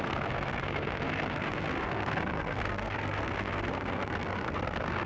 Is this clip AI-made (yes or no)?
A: yes